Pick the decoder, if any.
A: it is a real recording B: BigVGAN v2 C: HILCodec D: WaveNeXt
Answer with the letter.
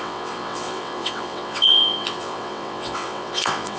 D